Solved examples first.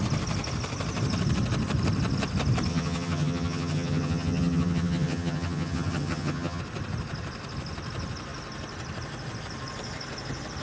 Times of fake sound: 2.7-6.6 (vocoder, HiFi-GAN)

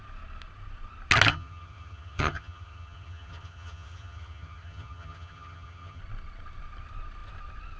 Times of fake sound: 1.3-6.0 (vocoder, HiFi-GAN)

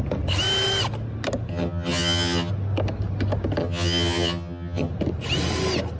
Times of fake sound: 1.5-2.5 (vocoder, HiFi-GAN); 3.6-4.9

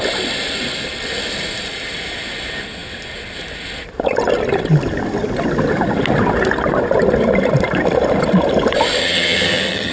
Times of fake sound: 9.0-9.9 (vocoder, HiFi-GAN)

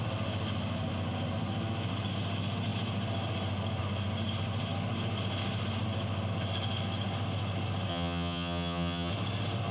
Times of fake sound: 7.9-9.1 (vocoder, HiFi-GAN)

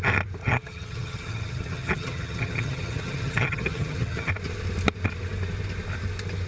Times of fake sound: 0.4-4.3 (vocoder, HiFi-GAN)